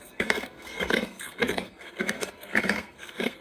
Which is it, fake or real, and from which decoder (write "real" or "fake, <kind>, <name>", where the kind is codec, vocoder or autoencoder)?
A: fake, codec, SNAC